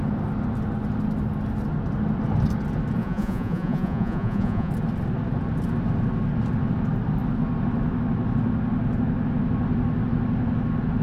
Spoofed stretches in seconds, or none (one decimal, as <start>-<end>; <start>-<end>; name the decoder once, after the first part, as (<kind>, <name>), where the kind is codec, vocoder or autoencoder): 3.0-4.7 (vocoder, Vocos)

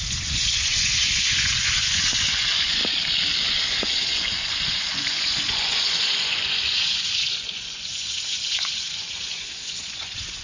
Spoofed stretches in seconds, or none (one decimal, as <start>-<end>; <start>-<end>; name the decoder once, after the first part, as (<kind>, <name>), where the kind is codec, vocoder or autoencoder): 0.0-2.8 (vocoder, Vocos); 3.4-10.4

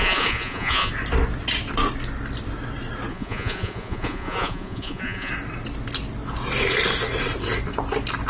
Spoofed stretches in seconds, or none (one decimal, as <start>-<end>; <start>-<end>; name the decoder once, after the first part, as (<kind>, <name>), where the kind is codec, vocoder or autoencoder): 0.0-0.9 (vocoder, Vocos); 3.1-5.3